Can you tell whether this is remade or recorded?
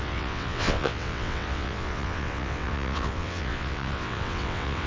remade